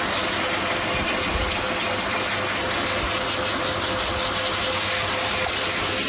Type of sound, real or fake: real